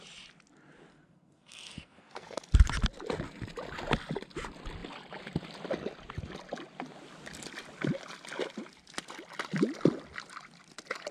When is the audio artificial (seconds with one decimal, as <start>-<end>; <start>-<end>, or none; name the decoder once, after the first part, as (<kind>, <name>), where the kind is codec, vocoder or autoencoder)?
0.9-2.4 (codec, SNAC)